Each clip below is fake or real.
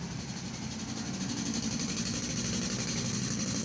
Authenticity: real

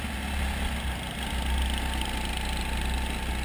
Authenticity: real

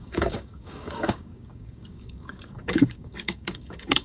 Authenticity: fake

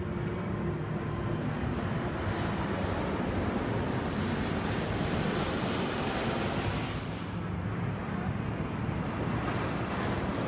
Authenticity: real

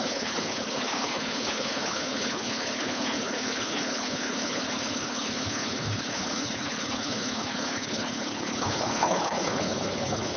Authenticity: fake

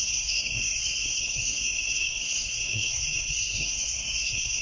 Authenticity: fake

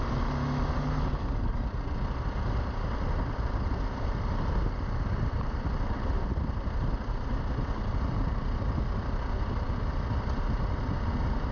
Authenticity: real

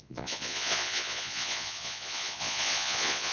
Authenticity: fake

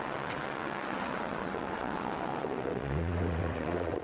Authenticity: fake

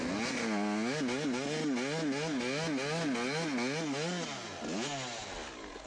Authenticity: real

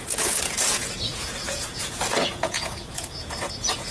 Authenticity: fake